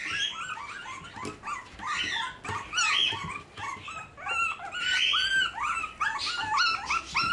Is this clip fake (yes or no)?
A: no